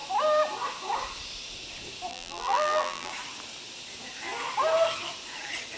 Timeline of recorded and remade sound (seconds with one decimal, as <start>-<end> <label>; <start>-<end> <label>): 0.0-2.1 recorded; 2.1-3.1 remade; 3.1-5.8 recorded